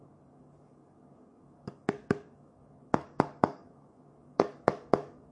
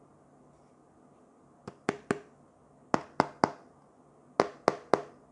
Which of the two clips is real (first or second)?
second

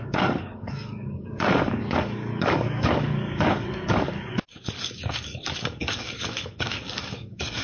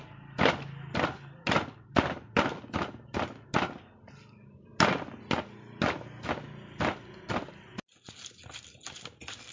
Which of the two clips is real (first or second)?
second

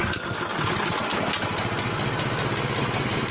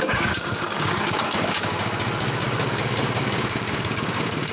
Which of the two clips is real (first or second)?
first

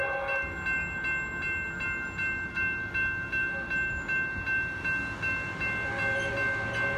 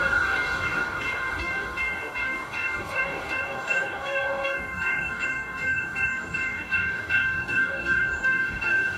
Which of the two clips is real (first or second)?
first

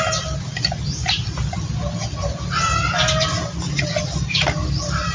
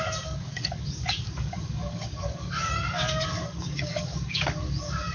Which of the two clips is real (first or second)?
first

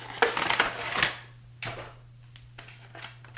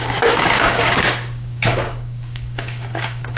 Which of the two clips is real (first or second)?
first